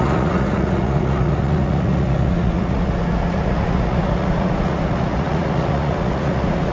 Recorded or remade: remade